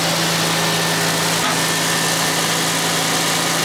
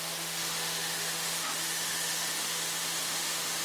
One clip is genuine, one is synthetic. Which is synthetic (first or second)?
second